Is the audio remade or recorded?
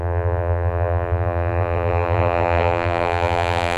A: remade